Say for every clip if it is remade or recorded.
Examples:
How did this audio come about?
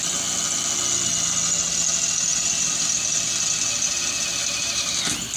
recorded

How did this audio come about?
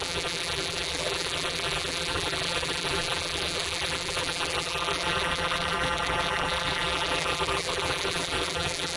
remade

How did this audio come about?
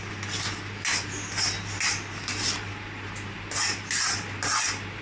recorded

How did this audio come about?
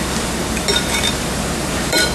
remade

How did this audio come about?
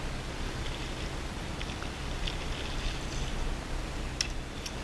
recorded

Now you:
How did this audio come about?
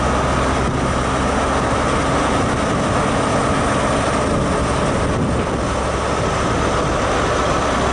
recorded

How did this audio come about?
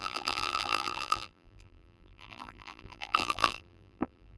remade